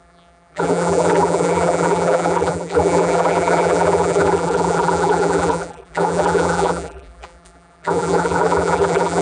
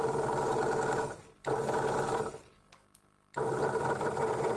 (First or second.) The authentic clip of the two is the second